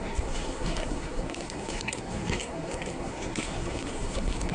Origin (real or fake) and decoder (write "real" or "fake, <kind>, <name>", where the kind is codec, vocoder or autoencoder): fake, codec, SNAC